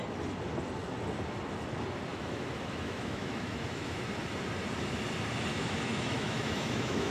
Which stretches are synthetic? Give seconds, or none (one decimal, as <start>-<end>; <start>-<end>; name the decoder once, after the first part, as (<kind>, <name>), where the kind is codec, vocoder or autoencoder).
2.1-4.0 (autoencoder, DAC-VAE); 5.5-7.1